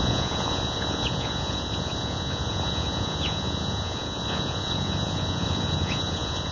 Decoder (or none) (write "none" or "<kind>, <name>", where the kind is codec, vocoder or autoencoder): vocoder, Vocos